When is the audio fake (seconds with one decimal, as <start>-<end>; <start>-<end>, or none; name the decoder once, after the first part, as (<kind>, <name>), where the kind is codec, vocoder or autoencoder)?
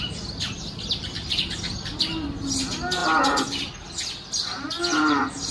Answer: none